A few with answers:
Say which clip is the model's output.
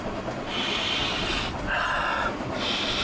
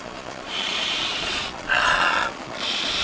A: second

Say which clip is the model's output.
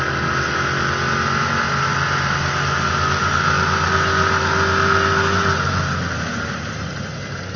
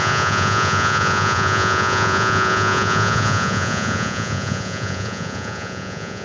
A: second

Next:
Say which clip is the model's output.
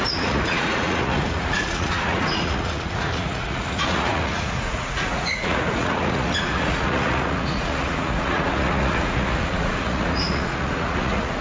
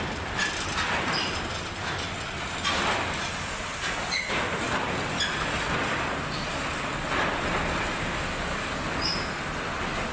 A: first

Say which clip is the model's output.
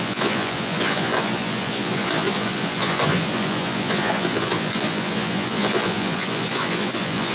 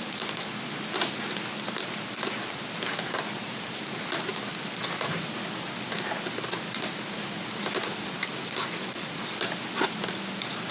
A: first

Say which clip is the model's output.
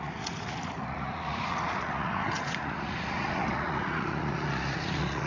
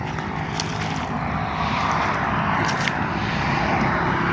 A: first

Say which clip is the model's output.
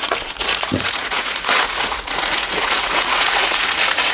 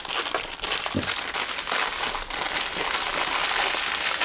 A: first